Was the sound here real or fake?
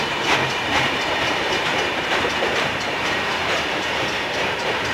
fake